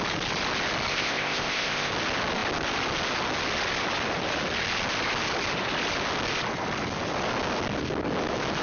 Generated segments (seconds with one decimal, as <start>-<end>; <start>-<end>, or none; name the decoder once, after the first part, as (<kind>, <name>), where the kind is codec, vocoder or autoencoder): 0.9-1.9 (codec, ZipCodec)